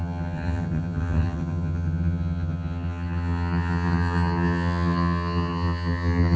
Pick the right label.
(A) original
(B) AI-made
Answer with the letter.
B